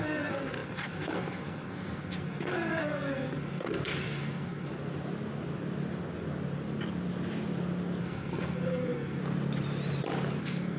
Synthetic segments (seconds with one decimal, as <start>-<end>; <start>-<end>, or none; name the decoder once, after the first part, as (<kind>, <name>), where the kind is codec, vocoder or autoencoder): 0.0-4.7 (codec, SNAC); 8.0-9.2; 10.4-10.8